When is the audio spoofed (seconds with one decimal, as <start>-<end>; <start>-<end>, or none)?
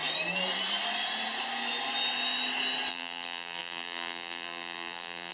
2.9-5.3